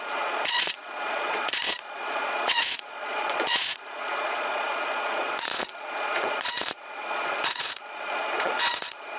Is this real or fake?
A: fake